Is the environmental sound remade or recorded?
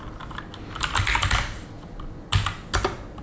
recorded